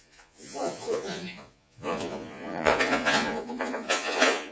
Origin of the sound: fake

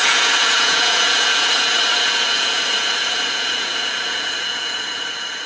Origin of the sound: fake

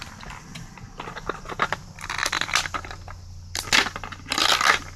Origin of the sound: real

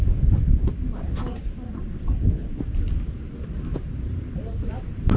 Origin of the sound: real